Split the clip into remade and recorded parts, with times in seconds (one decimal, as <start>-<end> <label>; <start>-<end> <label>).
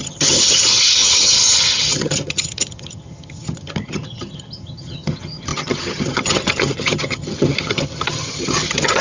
0.0-9.0 remade